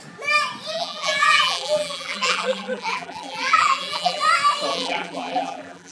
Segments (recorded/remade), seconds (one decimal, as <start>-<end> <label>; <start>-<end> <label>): 0.0-0.7 recorded; 0.7-4.2 remade; 4.2-4.7 recorded; 4.7-5.9 remade